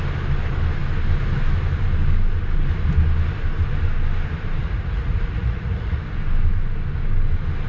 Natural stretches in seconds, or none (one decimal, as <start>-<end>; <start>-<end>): 0.0-4.6; 6.0-7.7